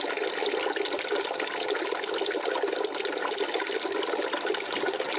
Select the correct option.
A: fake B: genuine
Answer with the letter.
B